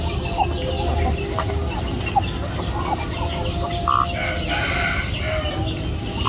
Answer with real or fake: real